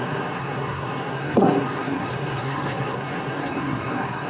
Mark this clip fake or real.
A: fake